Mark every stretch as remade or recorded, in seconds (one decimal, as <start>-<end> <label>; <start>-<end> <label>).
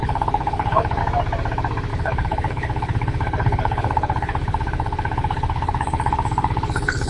0.0-1.0 remade; 1.0-1.9 recorded; 1.9-7.1 remade